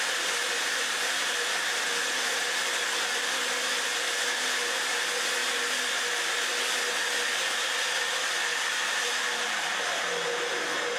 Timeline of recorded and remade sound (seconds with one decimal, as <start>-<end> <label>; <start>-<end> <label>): 0.0-11.0 recorded